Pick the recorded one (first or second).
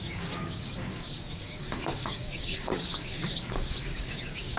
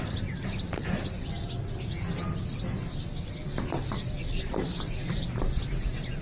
second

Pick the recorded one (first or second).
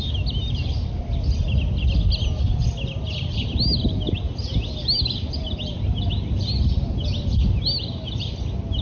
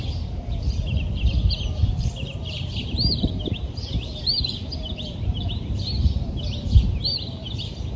first